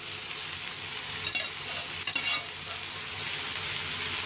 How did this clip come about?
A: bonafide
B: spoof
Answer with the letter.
A